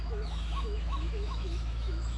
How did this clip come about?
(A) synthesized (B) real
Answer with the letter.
A